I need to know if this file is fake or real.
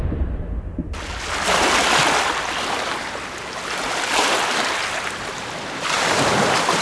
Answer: real